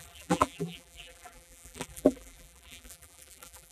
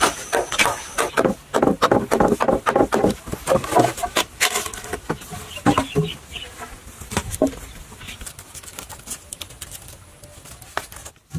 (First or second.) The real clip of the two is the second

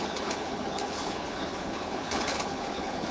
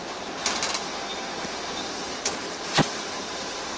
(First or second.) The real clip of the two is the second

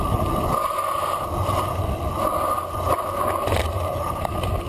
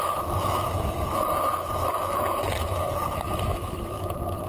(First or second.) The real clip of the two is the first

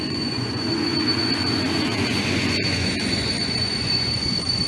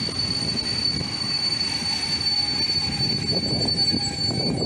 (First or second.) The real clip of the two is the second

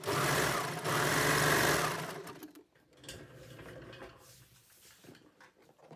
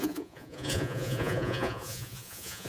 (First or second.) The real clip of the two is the first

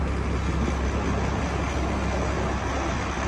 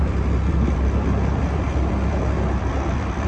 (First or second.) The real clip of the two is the first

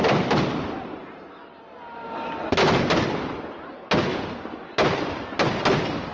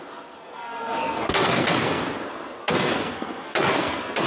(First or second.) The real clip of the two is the first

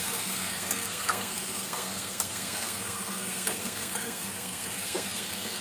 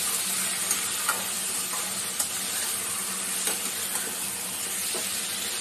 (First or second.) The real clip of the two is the second